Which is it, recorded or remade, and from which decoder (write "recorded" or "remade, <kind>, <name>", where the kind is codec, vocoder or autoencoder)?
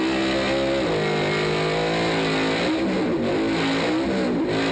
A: recorded